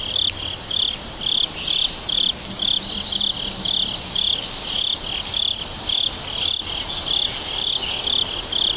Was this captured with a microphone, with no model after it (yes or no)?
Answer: yes